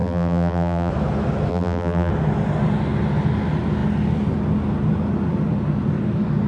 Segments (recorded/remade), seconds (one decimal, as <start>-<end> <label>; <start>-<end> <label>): 0.0-0.9 remade; 0.9-1.5 recorded; 1.5-2.1 remade; 2.1-6.5 recorded